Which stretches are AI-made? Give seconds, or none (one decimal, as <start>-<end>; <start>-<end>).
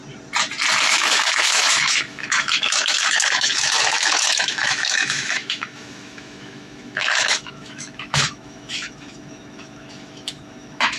0.9-11.0